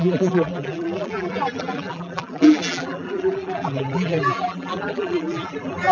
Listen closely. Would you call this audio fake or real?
fake